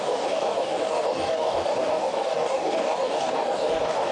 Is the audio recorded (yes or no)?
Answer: no